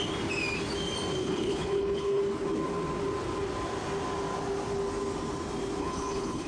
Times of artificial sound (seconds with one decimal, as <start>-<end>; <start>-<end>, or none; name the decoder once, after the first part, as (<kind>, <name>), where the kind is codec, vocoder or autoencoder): 1.2-2.2 (codec, HILCodec); 5.8-6.5